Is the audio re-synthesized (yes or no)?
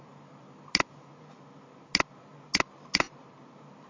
no